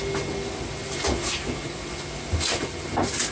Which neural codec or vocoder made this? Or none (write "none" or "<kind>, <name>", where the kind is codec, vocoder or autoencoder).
none